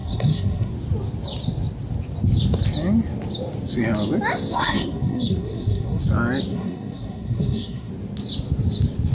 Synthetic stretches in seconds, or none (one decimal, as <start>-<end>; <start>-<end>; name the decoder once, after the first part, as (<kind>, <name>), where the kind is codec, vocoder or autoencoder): 0.0-0.7 (codec, SNAC); 4.5-6.0; 6.5-7.9